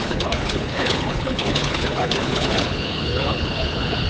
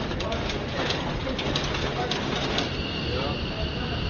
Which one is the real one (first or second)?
second